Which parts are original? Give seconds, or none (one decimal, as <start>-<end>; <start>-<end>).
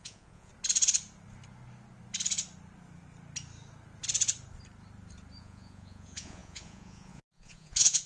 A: 0.5-5.4